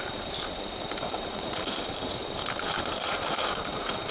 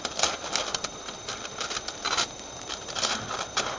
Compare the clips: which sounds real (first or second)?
second